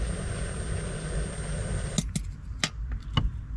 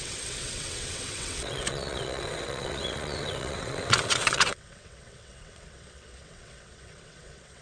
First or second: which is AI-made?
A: second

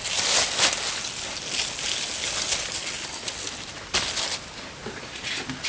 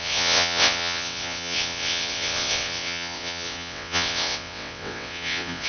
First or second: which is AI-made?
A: second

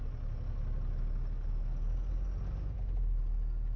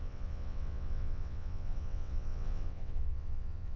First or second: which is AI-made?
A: second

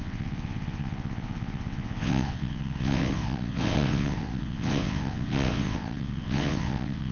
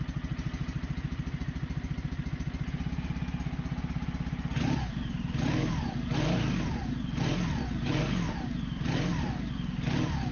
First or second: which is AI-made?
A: first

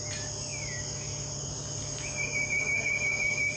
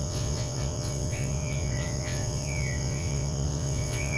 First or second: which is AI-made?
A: second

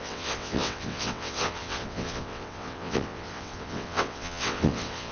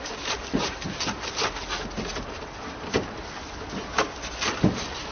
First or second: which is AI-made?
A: first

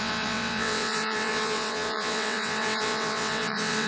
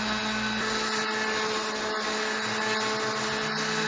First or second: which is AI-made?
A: first